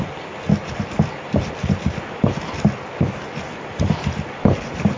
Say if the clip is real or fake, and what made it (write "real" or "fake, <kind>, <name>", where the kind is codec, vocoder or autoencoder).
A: real